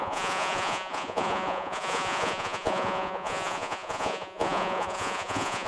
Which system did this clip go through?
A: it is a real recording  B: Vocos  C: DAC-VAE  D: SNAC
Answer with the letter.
B